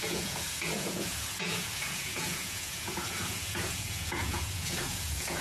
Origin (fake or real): fake